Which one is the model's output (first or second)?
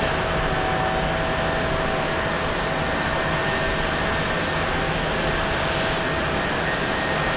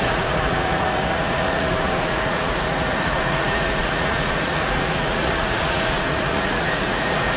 second